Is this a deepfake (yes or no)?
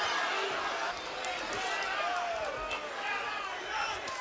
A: no